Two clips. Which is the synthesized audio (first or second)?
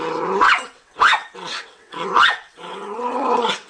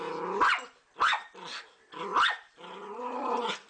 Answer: first